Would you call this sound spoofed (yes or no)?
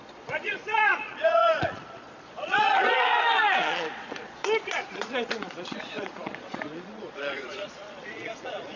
yes